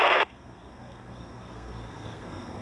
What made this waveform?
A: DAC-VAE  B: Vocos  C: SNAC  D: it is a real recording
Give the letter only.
C